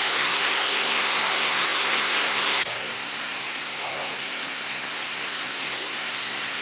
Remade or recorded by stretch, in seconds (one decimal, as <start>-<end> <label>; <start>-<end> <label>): 0.0-6.6 remade